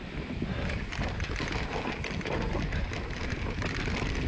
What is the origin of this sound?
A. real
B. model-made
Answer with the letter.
A